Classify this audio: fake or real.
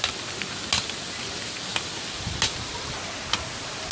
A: real